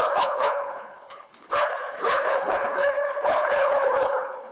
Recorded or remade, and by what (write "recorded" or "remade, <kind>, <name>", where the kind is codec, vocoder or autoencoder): remade, codec, HILCodec